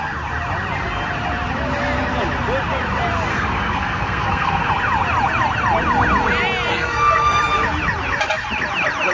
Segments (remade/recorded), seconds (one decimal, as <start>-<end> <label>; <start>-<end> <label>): 0.0-3.3 recorded; 3.3-4.7 remade; 4.7-6.7 recorded; 6.7-7.4 remade; 7.4-9.1 recorded